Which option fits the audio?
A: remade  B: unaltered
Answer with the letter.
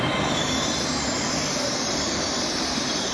A